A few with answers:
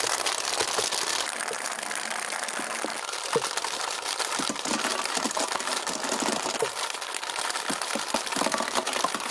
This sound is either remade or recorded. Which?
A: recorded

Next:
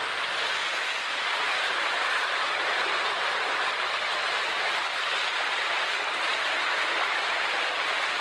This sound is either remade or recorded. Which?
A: recorded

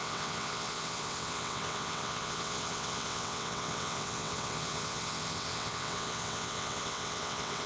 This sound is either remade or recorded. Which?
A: remade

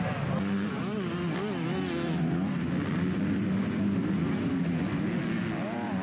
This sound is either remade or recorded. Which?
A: recorded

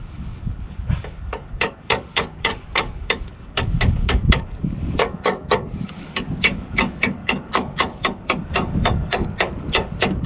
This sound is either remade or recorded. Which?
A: remade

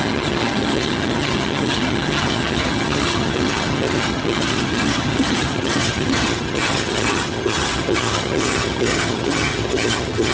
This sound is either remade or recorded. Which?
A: remade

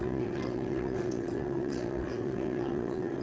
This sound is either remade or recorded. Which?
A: remade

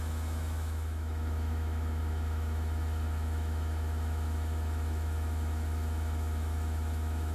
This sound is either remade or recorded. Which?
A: remade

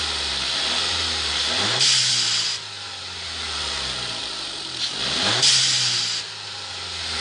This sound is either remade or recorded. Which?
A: recorded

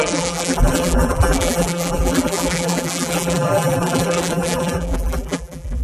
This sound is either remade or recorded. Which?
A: remade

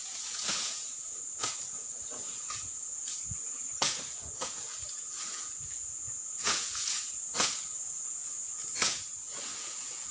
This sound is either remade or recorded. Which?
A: remade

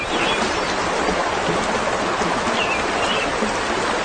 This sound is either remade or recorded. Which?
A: recorded